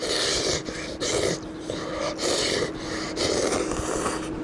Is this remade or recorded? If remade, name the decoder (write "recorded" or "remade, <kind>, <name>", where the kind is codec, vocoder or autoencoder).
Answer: recorded